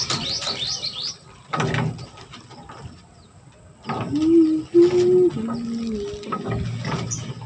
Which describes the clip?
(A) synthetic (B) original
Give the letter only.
B